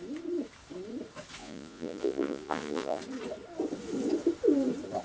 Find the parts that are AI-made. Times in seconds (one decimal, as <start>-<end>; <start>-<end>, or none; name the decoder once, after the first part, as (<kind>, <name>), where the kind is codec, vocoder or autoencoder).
1.4-3.0 (vocoder, Vocos)